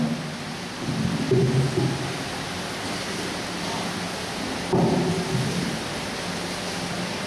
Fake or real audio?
real